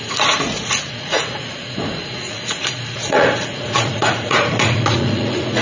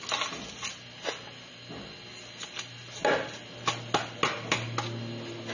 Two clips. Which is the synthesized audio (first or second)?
first